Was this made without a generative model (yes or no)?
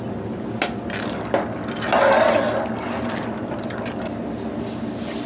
yes